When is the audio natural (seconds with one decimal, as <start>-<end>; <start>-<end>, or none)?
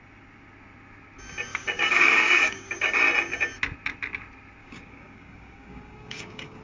0.0-1.5; 3.0-4.6